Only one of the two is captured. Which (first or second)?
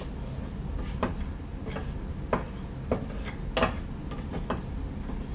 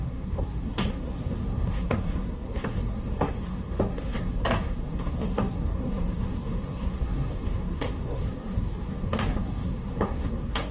first